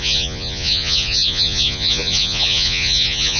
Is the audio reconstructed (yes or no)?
yes